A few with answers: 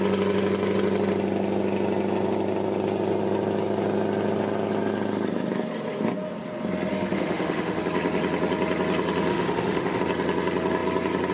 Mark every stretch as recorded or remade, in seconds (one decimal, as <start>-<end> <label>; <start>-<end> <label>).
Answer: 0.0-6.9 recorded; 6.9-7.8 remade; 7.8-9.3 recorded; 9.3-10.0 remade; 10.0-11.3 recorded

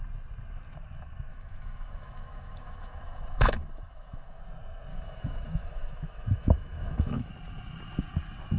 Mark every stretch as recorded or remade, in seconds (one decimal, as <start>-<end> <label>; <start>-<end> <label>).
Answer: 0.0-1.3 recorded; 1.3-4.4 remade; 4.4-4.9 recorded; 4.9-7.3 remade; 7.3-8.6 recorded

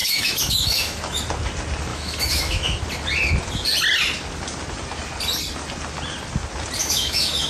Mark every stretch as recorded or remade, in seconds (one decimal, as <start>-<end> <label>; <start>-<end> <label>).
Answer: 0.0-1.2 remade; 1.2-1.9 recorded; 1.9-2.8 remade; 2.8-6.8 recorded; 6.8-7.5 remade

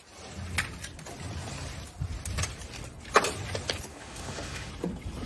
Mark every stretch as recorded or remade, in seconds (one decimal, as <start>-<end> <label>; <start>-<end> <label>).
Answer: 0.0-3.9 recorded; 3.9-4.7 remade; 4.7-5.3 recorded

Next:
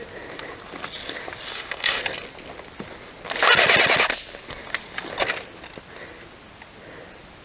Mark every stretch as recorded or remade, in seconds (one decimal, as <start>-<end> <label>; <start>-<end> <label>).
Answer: 0.0-1.5 recorded; 1.5-2.0 remade; 2.0-7.4 recorded

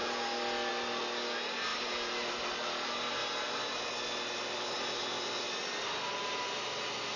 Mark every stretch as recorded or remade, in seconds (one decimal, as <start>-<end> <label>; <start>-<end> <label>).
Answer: 0.0-7.2 recorded

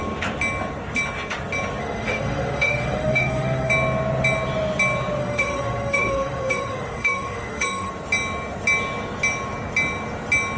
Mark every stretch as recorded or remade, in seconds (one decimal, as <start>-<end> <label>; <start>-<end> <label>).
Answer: 0.0-1.8 recorded; 1.8-3.7 remade; 3.7-5.2 recorded; 5.2-7.9 remade; 7.9-10.6 recorded